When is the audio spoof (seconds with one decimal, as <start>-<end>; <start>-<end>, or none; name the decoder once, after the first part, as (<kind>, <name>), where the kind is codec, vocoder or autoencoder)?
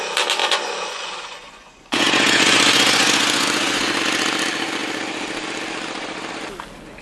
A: 0.4-4.0 (vocoder, Vocos)